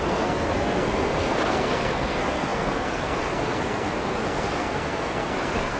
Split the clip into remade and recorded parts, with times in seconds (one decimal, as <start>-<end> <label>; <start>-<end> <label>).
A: 0.0-5.8 remade